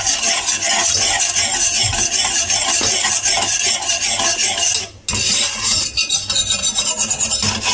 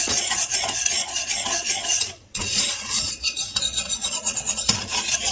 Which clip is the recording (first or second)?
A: first